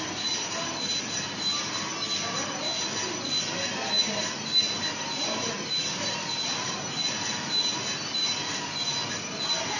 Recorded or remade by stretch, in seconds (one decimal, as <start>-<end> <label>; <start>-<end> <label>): 0.0-9.8 recorded